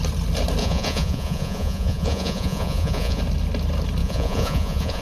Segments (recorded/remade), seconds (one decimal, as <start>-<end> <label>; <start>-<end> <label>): 0.0-0.6 recorded; 0.6-3.2 remade; 3.2-4.0 recorded; 4.0-5.0 remade